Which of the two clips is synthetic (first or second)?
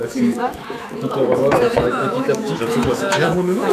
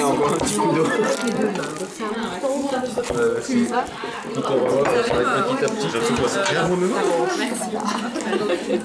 first